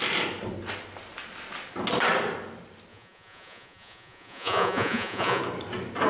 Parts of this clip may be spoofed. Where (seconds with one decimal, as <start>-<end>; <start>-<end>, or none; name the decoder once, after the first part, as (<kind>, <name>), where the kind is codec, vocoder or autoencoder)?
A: 2.9-5.4 (vocoder, Vocos)